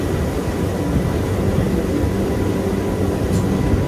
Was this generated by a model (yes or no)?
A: no